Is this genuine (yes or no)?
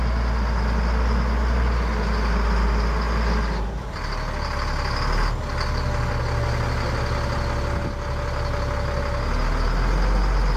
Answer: yes